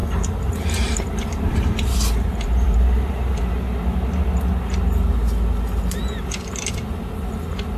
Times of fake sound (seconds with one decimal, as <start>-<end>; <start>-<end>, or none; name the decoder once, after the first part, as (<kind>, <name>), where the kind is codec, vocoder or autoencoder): 0.0-3.5 (vocoder, BigVGAN v2)